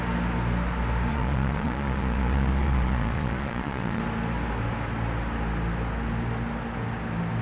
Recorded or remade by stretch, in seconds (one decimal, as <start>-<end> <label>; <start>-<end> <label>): 0.0-1.1 recorded; 1.1-4.0 remade; 4.0-7.4 recorded